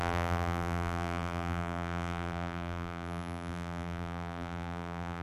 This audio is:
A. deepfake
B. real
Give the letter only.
A